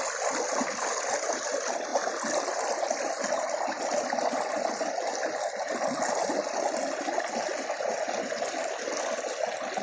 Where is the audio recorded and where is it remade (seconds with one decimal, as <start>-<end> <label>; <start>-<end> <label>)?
0.0-9.8 recorded